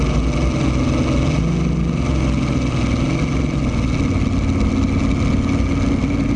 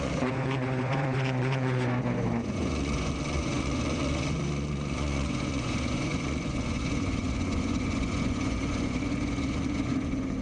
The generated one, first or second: second